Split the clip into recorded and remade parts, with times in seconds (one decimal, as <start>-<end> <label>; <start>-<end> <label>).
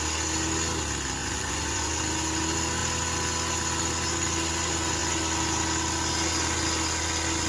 0.0-1.2 recorded; 1.2-1.9 remade; 1.9-7.5 recorded